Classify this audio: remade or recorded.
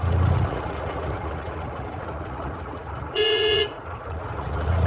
remade